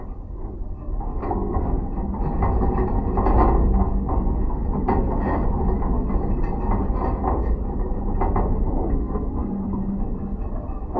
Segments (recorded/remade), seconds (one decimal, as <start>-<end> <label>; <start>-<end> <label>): 0.0-1.2 recorded; 1.2-1.8 remade; 1.8-8.8 recorded; 8.8-10.0 remade; 10.0-11.0 recorded